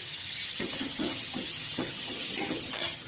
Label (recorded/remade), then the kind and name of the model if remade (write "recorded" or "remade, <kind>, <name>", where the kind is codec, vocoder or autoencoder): remade, vocoder, HiFi-GAN